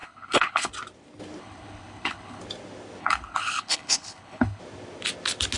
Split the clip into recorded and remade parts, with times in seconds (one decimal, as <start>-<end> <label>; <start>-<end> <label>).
0.0-0.7 remade; 0.7-1.4 recorded; 1.4-2.4 remade; 2.4-3.0 recorded; 3.0-4.6 remade; 4.6-5.6 recorded